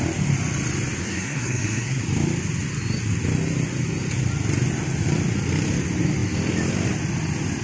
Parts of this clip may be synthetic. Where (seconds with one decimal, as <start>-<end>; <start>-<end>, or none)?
1.0-2.0